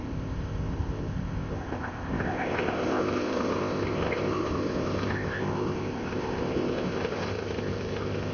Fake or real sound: fake